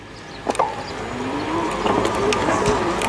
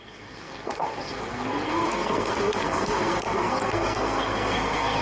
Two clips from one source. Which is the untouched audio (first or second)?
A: first